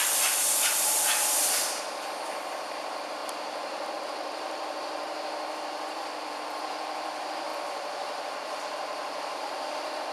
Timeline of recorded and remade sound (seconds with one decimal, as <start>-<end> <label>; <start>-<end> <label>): 0.0-10.1 remade